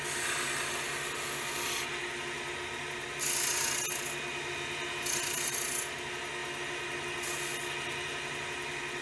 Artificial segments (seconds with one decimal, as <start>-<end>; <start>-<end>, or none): none